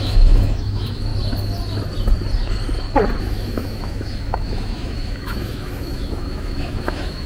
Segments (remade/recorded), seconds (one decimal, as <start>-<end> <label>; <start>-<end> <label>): 0.0-1.1 remade; 1.1-3.2 recorded; 3.2-7.3 remade